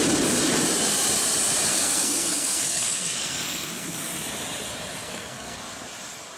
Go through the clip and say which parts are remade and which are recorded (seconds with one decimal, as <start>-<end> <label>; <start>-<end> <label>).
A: 0.0-1.7 recorded; 1.7-4.1 remade; 4.1-5.0 recorded; 5.0-5.6 remade; 5.6-6.4 recorded